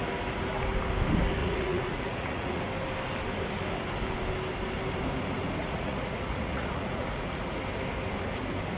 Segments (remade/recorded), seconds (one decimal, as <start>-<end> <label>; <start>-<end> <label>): 0.0-1.4 recorded; 1.4-2.6 remade; 2.6-5.6 recorded; 5.6-7.4 remade; 7.4-8.8 recorded